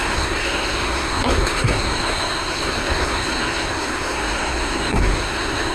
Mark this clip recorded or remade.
remade